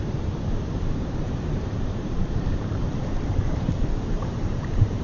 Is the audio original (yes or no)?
no